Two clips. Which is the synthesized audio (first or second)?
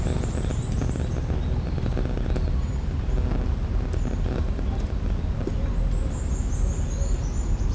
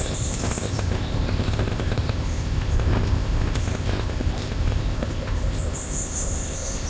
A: second